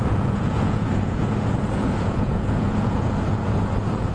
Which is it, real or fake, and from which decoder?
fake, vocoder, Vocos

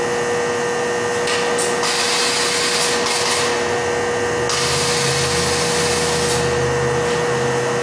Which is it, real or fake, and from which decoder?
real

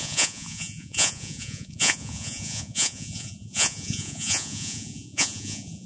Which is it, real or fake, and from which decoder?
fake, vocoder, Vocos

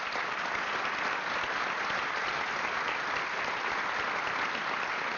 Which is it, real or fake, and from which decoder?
real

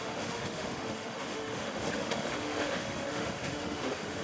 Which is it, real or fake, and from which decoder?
fake, autoencoder, DAC-VAE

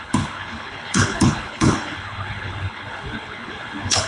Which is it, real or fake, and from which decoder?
fake, codec, HILCodec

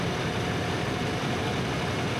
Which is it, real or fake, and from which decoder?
real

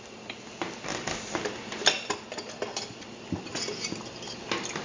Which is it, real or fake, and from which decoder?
real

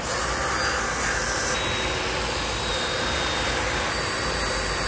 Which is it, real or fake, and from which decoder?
real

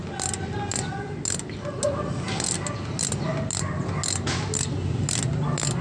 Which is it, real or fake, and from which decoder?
real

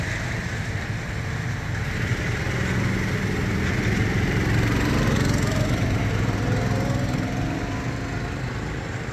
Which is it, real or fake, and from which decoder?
real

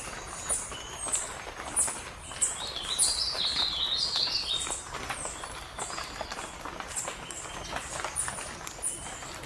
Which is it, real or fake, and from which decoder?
real